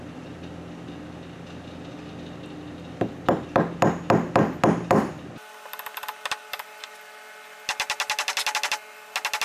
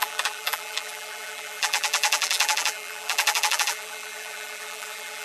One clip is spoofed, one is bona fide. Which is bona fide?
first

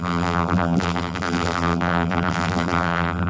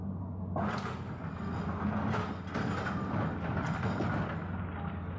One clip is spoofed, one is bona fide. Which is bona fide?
second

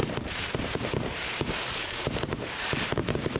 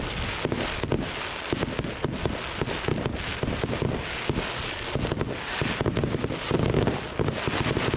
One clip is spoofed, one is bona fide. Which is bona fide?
second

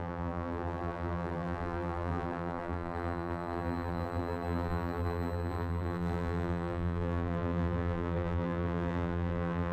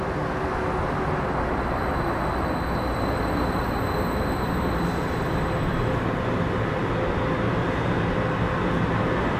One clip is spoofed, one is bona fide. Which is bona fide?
second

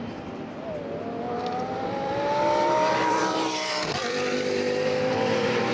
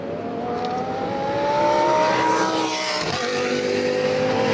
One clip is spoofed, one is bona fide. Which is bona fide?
second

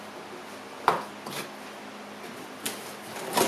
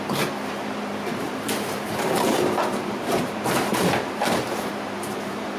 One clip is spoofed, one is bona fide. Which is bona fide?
first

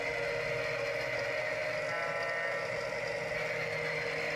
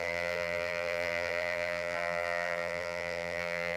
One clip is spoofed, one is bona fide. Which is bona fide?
first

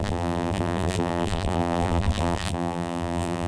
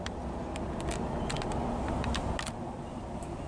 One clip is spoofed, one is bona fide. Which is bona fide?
second